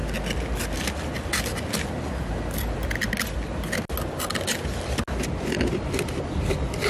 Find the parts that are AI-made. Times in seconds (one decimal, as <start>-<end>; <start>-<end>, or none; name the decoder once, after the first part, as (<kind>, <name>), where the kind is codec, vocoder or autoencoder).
none